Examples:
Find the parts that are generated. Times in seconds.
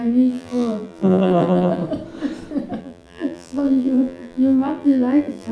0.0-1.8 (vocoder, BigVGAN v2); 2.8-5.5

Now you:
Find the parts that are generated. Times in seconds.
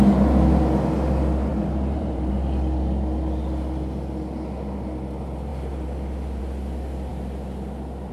1.5-2.3 (vocoder, BigVGAN v2)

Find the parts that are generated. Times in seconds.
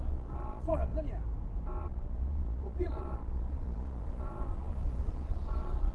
0.0-0.9 (vocoder, Vocos); 1.8-5.9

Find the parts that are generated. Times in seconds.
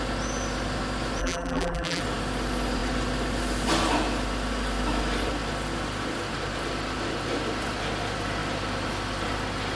1.2-2.0 (vocoder, BigVGAN v2)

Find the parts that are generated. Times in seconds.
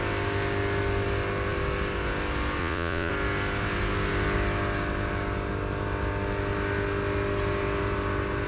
2.6-3.1 (vocoder, Vocos)